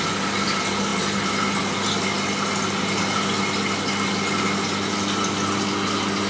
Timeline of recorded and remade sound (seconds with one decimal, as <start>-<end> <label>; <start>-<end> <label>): 0.0-6.3 recorded